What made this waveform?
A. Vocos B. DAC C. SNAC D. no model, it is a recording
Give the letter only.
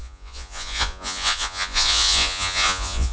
A